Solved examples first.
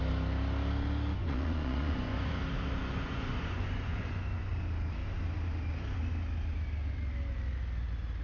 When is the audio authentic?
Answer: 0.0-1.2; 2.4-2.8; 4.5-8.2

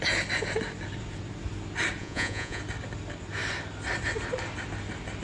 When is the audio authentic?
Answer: 0.0-2.0; 2.6-5.2

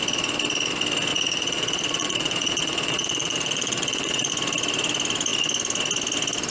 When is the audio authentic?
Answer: 0.0-1.1; 4.3-6.5

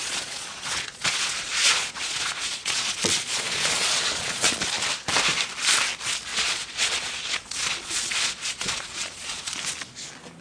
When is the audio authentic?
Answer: 4.6-6.3; 9.5-10.4

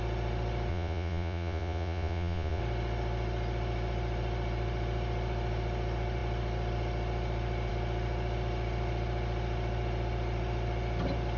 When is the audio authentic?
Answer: 0.0-0.7; 2.6-11.4